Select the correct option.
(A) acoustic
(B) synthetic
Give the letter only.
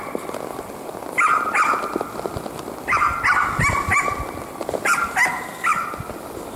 A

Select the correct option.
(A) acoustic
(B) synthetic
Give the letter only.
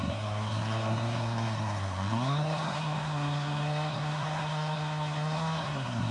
B